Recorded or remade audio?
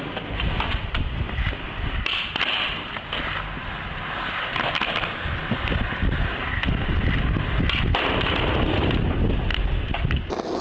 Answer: recorded